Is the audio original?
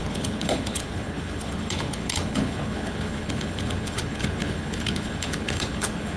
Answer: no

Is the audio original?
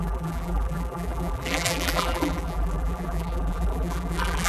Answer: no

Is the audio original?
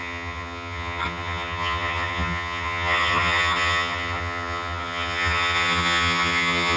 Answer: no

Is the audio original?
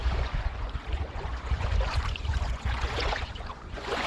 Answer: no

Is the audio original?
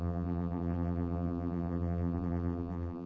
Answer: no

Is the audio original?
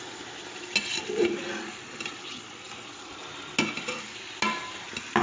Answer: yes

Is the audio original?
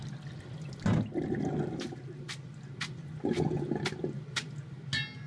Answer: yes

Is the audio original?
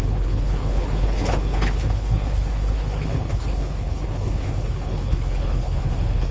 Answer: no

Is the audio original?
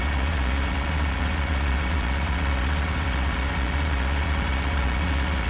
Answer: no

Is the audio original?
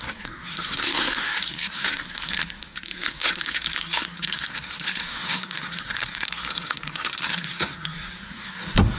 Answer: no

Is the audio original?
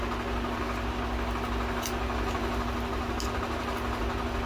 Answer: yes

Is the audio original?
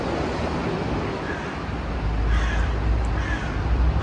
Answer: yes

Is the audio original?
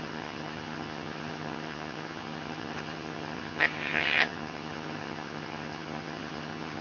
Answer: no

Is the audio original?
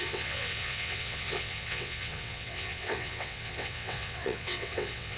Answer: no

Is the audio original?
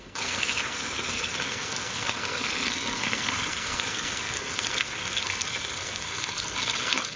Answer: no